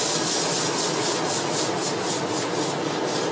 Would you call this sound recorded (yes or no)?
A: yes